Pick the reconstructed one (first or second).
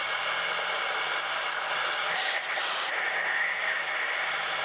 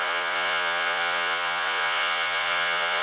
second